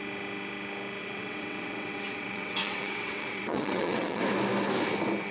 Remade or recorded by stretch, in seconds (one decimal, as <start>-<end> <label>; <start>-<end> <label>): 0.0-1.0 recorded; 1.0-4.2 remade; 4.2-5.3 recorded